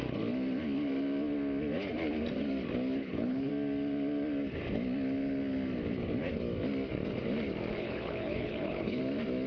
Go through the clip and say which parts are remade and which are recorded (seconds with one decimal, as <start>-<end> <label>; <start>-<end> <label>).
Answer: 0.0-3.0 recorded; 3.0-3.5 remade; 3.5-7.7 recorded; 7.7-9.0 remade; 9.0-9.5 recorded